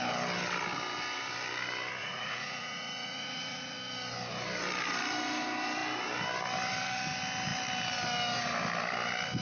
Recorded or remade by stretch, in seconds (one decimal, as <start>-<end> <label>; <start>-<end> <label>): 0.0-2.0 recorded; 2.0-3.8 remade; 3.8-9.4 recorded